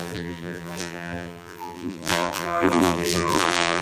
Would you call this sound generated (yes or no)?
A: yes